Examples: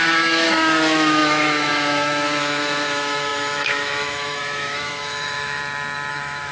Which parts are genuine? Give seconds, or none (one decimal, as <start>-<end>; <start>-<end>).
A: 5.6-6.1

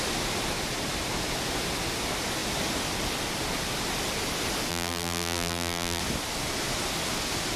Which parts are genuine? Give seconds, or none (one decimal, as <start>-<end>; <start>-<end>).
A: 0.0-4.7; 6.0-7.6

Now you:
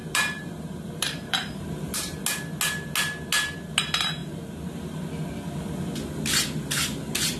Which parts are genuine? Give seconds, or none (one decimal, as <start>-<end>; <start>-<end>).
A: 2.2-4.2; 4.9-7.4

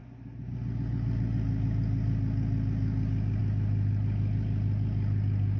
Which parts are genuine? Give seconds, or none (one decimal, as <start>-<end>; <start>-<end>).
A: 0.0-5.6

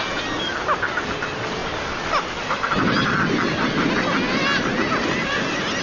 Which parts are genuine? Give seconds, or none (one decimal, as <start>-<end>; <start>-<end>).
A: 0.0-5.8